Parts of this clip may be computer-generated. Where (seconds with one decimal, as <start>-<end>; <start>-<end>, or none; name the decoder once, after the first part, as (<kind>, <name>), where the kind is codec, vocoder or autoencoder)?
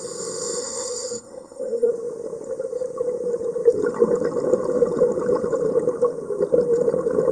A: 0.6-1.9 (codec, SNAC)